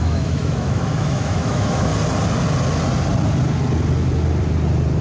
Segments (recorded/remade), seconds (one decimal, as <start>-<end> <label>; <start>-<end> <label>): 0.0-1.9 remade; 1.9-5.0 recorded